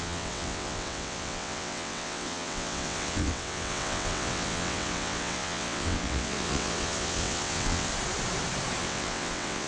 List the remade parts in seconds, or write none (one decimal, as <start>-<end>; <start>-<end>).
0.0-7.9; 8.8-9.7